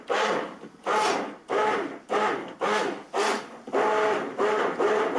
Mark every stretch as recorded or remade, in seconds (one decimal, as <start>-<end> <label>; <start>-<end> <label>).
0.0-5.2 recorded